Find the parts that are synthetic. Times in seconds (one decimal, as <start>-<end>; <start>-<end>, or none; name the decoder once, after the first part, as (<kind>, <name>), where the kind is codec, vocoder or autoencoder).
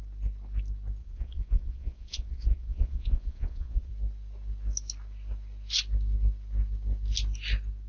1.0-3.9 (vocoder, Vocos)